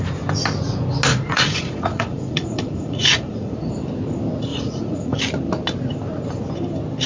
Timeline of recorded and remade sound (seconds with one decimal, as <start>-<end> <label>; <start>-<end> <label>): 0.0-1.1 recorded; 1.1-3.7 remade; 3.7-4.5 recorded; 4.5-5.2 remade; 5.2-7.1 recorded